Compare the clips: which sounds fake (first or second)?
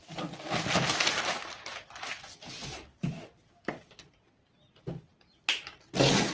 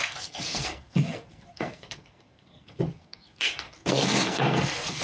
second